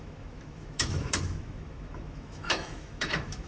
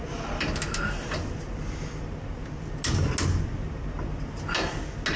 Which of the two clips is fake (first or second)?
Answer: first